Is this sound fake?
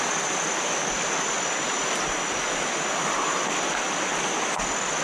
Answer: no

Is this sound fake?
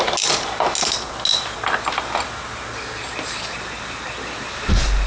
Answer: no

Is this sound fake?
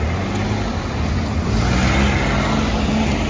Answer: no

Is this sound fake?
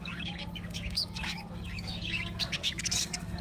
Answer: yes